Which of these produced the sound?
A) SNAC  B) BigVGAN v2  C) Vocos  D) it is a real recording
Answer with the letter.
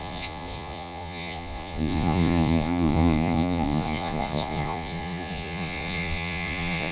C